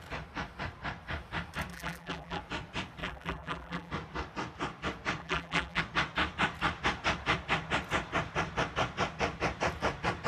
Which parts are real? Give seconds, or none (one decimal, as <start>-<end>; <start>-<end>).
0.0-1.7; 2.4-3.0; 3.9-5.2; 5.8-10.3